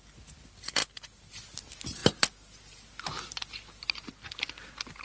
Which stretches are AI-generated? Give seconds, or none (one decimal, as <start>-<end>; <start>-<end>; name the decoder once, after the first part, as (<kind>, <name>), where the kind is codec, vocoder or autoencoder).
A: none